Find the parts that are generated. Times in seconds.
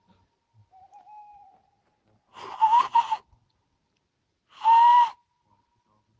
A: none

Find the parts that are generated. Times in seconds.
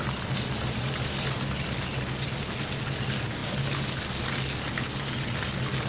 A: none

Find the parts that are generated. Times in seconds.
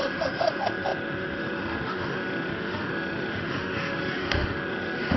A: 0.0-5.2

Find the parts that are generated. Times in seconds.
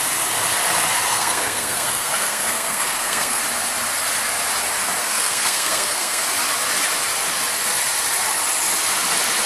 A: 1.1-3.4; 5.0-6.2